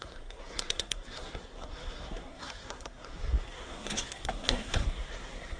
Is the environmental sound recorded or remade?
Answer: remade